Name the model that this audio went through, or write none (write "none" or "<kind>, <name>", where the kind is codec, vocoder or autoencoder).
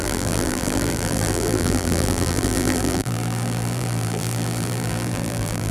vocoder, BigVGAN v2